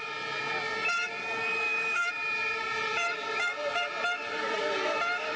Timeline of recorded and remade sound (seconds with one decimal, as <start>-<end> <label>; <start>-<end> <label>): 0.0-1.2 recorded; 1.2-2.1 remade; 2.1-5.4 recorded